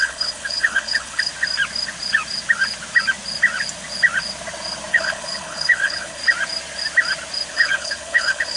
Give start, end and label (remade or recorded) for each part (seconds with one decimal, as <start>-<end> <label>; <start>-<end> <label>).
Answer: 0.0-1.3 remade; 1.3-4.9 recorded; 4.9-6.2 remade; 6.2-7.5 recorded; 7.5-8.6 remade